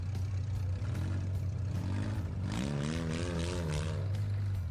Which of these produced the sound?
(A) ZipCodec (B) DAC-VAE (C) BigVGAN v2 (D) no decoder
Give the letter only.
D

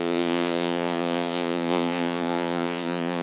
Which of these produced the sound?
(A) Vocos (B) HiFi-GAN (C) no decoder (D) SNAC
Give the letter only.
A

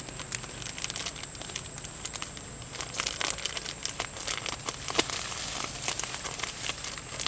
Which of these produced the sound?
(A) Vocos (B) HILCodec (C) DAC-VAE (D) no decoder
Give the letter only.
D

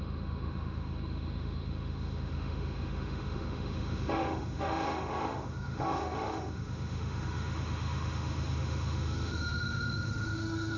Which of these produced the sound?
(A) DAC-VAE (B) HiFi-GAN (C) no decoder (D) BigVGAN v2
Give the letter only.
A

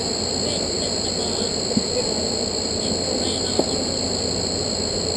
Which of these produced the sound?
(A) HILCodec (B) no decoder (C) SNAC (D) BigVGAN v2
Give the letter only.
B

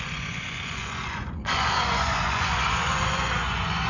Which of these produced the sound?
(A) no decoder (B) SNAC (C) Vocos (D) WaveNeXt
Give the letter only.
C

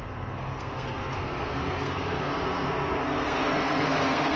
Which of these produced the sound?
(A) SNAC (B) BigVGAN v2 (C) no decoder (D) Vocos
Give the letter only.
A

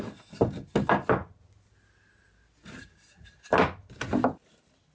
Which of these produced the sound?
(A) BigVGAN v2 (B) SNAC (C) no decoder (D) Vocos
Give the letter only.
C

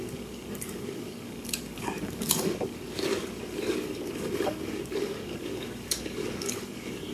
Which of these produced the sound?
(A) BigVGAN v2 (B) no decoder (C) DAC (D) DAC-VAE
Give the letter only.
C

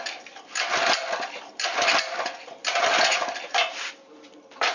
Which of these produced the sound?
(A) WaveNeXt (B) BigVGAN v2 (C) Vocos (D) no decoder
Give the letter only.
D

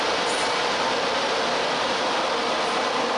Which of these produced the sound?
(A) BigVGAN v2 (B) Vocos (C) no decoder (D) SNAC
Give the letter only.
C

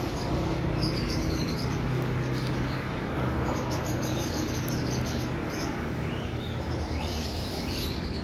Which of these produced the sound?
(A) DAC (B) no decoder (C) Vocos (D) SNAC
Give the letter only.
A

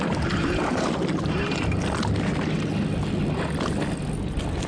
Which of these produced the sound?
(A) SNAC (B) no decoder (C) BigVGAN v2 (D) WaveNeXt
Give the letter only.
B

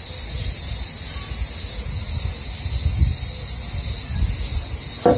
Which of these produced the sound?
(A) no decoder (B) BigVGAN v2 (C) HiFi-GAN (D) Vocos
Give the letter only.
A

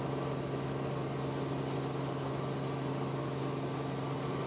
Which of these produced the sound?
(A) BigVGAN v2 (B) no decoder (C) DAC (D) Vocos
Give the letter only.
B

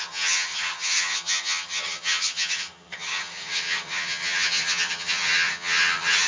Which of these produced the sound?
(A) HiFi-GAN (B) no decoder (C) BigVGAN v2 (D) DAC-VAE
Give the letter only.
A